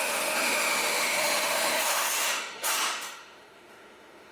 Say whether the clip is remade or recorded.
remade